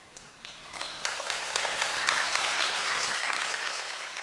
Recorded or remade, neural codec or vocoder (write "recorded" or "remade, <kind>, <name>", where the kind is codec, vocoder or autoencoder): remade, codec, SNAC